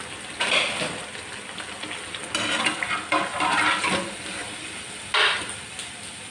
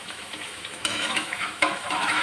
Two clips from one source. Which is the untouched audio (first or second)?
first